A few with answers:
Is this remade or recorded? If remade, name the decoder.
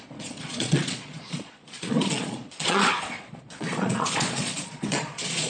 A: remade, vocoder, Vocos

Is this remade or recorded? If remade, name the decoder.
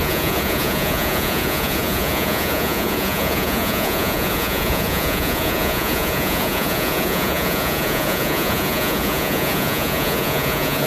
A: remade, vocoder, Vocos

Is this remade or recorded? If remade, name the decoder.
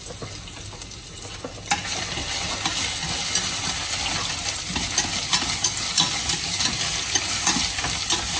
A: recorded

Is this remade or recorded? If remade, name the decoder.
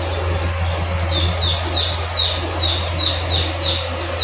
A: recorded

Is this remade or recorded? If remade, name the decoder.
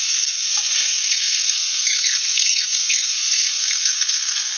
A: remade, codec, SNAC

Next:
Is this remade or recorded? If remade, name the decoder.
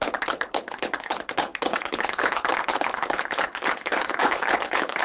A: remade, codec, HILCodec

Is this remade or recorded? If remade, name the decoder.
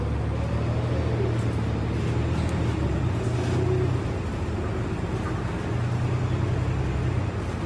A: recorded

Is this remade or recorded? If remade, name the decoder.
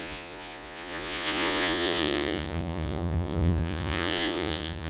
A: remade, vocoder, Vocos